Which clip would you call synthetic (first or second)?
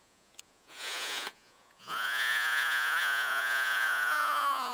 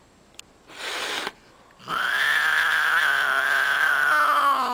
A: first